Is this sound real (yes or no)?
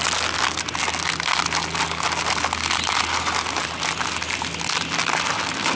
yes